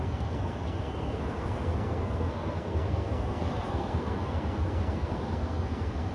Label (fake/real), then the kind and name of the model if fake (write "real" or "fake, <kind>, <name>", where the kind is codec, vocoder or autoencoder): fake, codec, SNAC